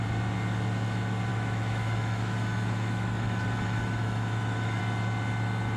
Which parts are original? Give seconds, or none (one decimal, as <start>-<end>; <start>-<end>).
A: 0.0-1.3; 4.8-5.8